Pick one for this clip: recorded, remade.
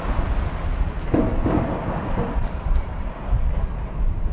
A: recorded